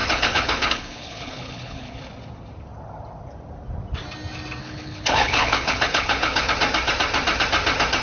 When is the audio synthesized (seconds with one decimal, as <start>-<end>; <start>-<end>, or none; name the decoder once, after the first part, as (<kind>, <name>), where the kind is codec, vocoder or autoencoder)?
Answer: 0.0-2.0 (codec, HILCodec); 4.6-6.5